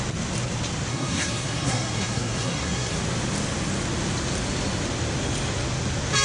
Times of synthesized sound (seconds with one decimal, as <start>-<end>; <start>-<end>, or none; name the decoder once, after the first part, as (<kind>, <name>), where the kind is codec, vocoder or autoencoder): 0.9-3.0 (codec, SNAC)